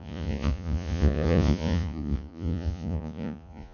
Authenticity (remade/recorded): remade